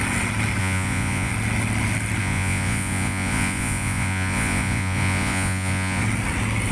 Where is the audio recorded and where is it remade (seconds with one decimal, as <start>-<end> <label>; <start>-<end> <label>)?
0.0-0.6 recorded; 0.6-1.3 remade; 1.3-2.2 recorded; 2.2-6.0 remade; 6.0-6.7 recorded